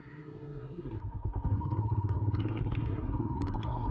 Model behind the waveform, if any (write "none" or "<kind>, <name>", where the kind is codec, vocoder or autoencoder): codec, SNAC